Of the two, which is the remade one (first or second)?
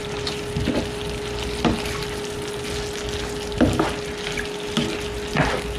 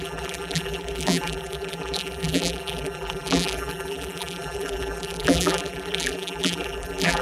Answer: second